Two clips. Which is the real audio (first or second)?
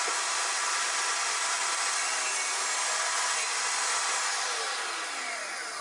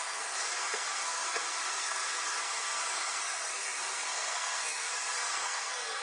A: first